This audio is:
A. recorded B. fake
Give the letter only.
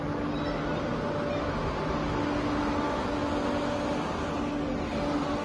A